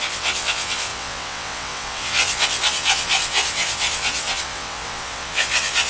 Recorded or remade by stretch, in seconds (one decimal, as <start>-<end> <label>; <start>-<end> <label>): 0.0-5.9 remade